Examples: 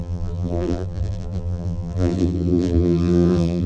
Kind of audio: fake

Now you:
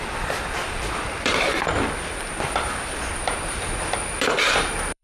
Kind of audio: fake